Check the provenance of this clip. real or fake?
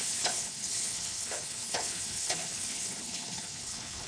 fake